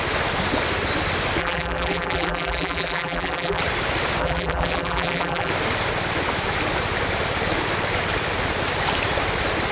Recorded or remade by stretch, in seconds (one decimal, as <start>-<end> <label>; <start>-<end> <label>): 0.0-1.4 recorded; 1.4-3.6 remade; 3.6-4.2 recorded; 4.2-5.5 remade; 5.5-9.7 recorded